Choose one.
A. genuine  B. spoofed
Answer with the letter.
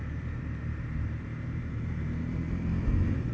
B